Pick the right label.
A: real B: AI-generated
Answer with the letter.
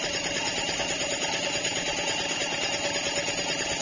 A